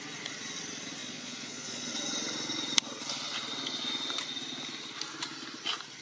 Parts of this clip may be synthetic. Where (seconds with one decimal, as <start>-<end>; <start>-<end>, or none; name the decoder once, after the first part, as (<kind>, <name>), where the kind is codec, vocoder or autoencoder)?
1.0-1.9 (vocoder, Vocos)